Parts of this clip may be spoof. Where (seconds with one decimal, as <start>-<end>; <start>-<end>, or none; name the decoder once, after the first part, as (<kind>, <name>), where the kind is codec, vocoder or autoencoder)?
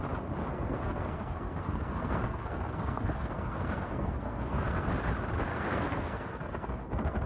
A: 0.5-4.9 (codec, SNAC); 5.5-7.3